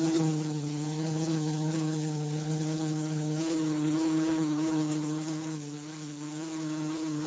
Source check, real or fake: fake